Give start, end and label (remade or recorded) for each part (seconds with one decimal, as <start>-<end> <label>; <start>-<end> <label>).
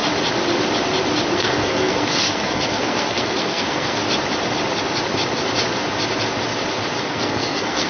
0.0-1.3 recorded; 1.3-4.0 remade; 4.0-7.0 recorded; 7.0-7.9 remade